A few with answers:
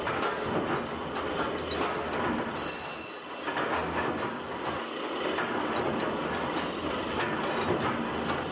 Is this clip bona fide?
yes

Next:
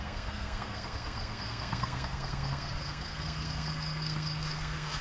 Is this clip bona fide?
no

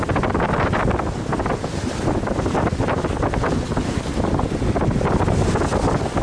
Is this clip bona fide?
yes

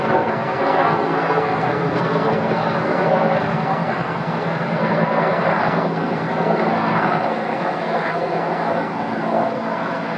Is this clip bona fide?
no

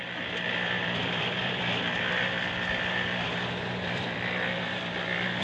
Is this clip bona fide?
no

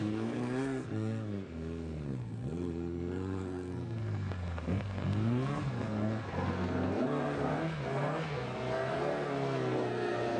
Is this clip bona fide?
no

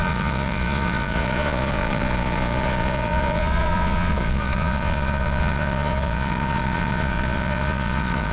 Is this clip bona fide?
no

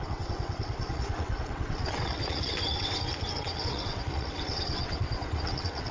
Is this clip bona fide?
no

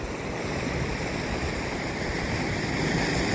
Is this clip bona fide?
yes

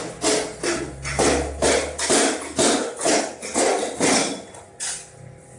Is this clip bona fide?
yes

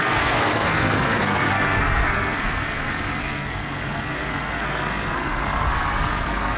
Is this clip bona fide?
no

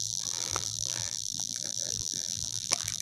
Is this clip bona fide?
no